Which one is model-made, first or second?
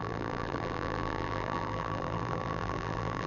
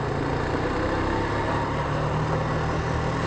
first